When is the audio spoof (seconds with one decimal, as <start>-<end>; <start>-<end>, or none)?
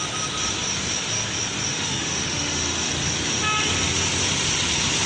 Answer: 1.7-2.9